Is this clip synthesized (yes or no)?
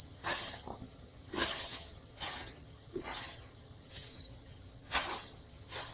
yes